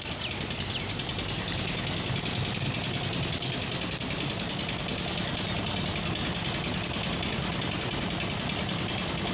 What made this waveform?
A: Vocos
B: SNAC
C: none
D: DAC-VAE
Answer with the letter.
C